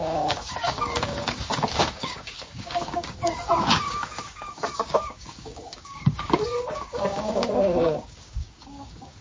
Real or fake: fake